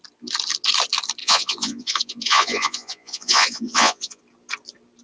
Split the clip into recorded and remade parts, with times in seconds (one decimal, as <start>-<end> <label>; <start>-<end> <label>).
0.0-1.2 recorded; 1.2-4.2 remade; 4.2-5.0 recorded